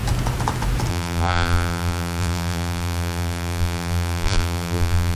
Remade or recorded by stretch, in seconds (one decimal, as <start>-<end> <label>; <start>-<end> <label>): 0.0-0.9 recorded; 0.9-5.1 remade